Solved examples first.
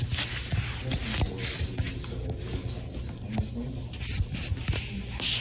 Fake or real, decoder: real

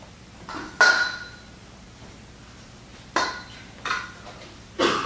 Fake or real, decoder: real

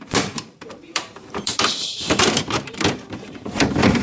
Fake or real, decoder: fake, vocoder, BigVGAN v2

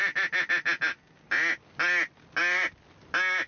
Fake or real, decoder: real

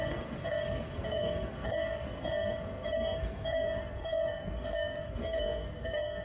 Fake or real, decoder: fake, codec, SNAC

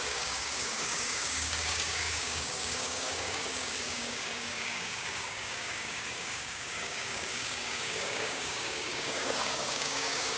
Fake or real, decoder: fake, codec, DAC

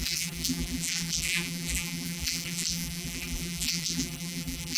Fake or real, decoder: fake, vocoder, BigVGAN v2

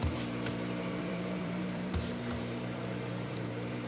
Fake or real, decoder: fake, vocoder, BigVGAN v2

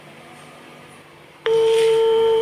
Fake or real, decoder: fake, vocoder, BigVGAN v2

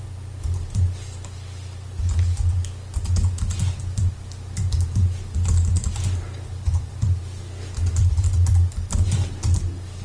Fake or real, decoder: real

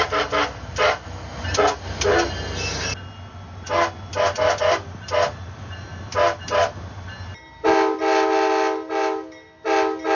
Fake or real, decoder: real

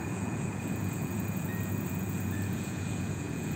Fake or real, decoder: fake, vocoder, Vocos